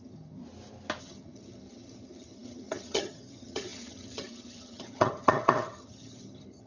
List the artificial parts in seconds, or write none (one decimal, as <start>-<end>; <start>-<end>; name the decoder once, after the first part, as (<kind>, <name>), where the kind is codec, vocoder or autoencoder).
0.0-0.4 (vocoder, HiFi-GAN); 1.0-6.7